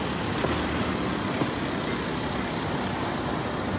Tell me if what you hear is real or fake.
real